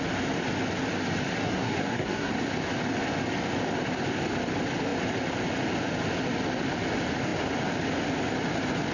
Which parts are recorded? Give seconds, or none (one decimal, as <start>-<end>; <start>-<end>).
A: 0.0-1.4; 2.3-8.9